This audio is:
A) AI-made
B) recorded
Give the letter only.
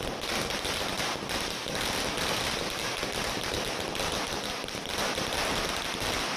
B